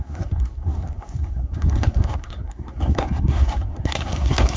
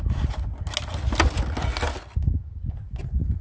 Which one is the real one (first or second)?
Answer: second